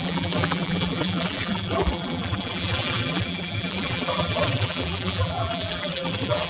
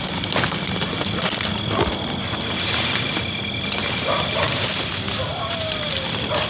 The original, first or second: second